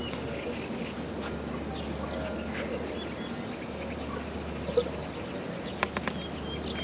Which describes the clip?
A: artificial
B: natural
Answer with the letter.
B